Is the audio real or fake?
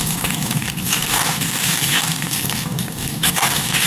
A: fake